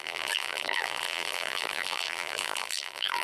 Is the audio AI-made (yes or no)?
yes